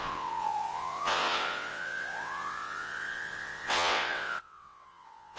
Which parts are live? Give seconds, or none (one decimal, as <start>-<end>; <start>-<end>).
none